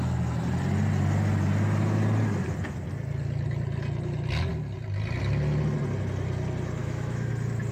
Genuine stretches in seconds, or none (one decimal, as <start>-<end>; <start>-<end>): 0.0-6.8; 7.3-7.7